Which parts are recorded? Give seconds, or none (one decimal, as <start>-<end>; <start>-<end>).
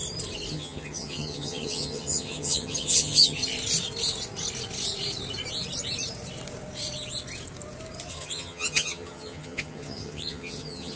0.0-0.5; 3.4-8.1